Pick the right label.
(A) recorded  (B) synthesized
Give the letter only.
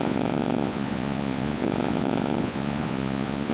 B